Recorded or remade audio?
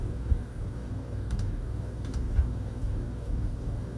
remade